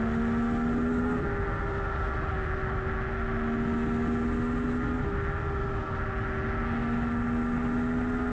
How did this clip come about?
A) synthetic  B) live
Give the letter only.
B